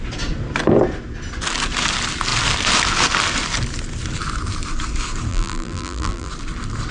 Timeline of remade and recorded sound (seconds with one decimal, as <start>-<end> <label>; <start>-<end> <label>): 0.0-5.3 recorded; 5.3-6.3 remade; 6.3-6.9 recorded